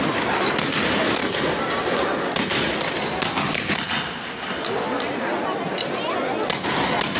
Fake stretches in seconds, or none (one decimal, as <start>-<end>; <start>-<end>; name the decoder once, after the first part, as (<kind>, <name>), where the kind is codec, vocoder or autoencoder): none